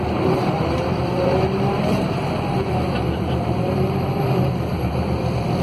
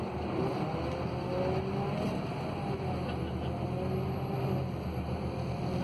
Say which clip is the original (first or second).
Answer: second